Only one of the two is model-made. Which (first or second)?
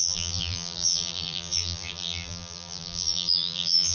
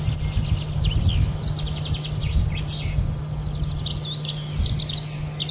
first